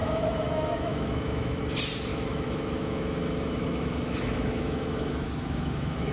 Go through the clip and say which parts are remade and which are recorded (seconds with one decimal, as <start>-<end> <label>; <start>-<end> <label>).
0.0-1.6 remade; 1.6-2.1 recorded; 2.1-6.1 remade